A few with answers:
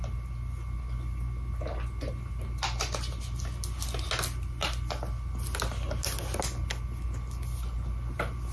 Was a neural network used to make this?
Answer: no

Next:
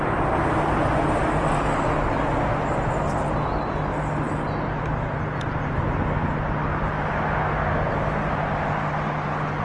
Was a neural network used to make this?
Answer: no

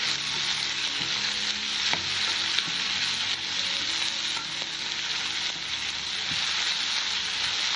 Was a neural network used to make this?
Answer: no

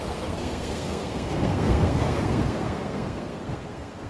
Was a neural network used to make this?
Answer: yes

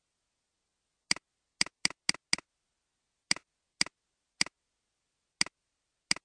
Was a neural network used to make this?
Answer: no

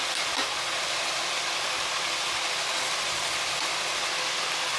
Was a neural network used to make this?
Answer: no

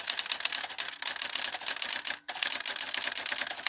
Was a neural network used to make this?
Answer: no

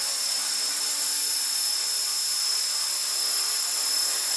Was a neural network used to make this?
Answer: no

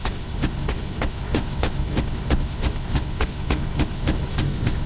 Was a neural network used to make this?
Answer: yes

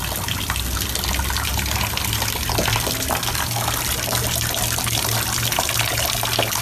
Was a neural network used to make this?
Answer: no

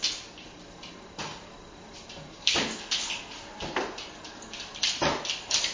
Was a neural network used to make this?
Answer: no